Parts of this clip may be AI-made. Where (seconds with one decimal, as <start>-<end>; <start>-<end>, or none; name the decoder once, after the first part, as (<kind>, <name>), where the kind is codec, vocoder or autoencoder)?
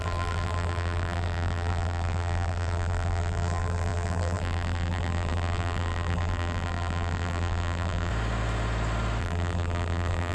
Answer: 0.0-8.1 (vocoder, BigVGAN v2); 9.2-10.3